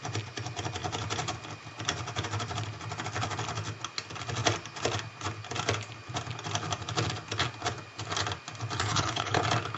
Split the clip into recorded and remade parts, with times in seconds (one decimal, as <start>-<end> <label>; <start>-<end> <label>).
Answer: 0.0-8.8 recorded; 8.8-9.4 remade; 9.4-9.8 recorded